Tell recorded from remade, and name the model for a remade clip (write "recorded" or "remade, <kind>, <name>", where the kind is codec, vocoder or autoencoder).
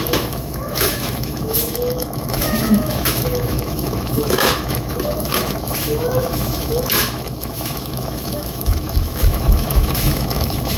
remade, autoencoder, DAC-VAE